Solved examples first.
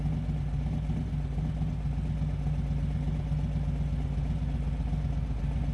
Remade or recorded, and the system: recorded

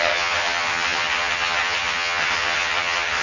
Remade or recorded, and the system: remade, vocoder, HiFi-GAN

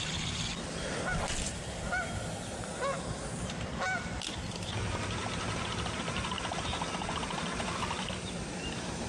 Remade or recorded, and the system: recorded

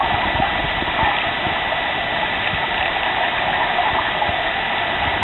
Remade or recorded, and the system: recorded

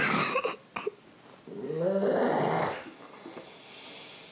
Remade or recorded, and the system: recorded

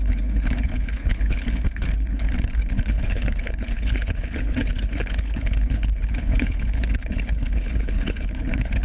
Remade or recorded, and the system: remade, codec, HILCodec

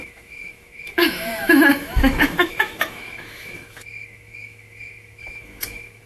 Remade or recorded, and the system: remade, autoencoder, DAC-VAE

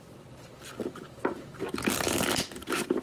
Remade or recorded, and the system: recorded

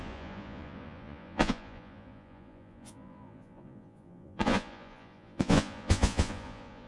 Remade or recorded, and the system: remade, vocoder, Vocos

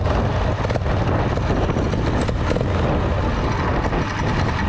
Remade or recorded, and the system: recorded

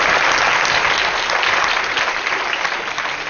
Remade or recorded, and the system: recorded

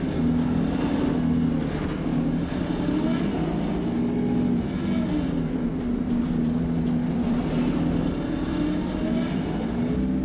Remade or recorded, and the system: recorded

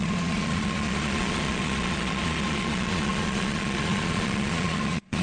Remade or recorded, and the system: remade, vocoder, Vocos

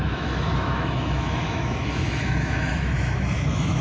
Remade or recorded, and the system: remade, autoencoder, DAC-VAE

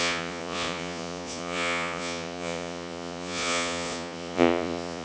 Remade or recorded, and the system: remade, vocoder, Vocos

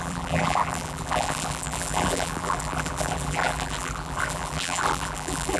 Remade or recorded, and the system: remade, vocoder, BigVGAN v2